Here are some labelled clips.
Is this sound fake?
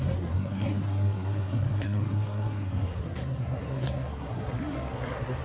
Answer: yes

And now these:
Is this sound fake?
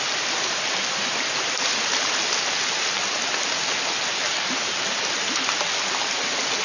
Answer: no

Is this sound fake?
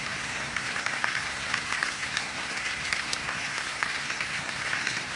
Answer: yes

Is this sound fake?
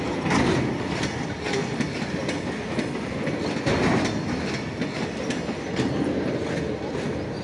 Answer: no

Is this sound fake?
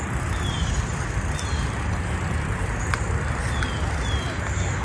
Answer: no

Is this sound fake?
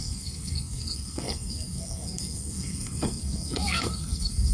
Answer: yes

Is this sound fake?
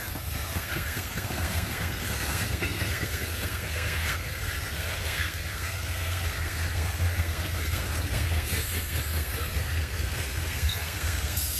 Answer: yes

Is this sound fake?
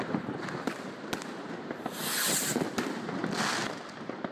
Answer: no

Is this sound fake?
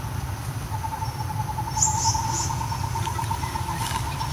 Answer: no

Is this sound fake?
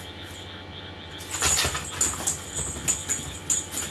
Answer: no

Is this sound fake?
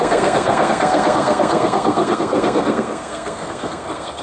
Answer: yes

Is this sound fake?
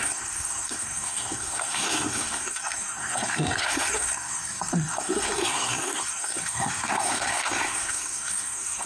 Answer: yes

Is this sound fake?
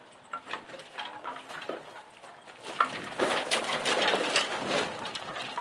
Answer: no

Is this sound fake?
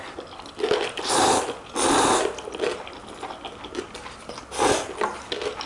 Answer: no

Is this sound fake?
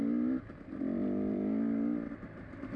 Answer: no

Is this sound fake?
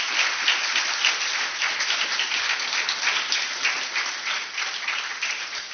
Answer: no